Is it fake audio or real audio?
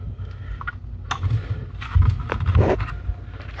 real